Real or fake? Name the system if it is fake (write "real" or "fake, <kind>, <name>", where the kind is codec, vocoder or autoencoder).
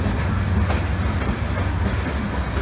real